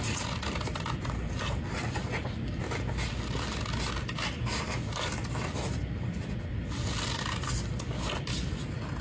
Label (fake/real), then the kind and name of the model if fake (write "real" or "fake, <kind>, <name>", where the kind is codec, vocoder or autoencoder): real